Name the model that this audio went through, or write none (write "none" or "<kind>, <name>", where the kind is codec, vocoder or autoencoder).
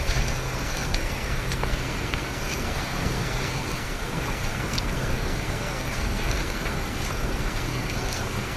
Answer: codec, SNAC